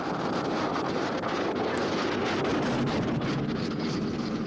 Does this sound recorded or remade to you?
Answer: recorded